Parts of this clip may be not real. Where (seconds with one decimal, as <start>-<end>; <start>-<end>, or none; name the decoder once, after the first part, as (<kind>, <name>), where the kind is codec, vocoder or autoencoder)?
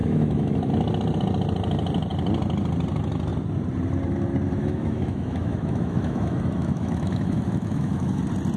0.0-0.7 (autoencoder, DAC-VAE); 4.6-8.2